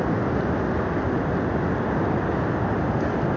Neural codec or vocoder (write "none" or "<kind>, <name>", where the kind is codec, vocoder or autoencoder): none